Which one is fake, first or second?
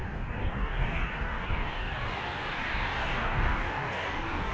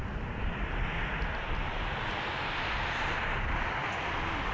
first